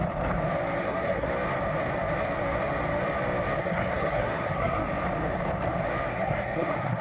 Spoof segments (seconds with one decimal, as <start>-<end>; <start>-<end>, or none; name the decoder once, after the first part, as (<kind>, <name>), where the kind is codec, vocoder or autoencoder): 0.8-1.3 (codec, SNAC); 3.6-4.8; 6.1-7.0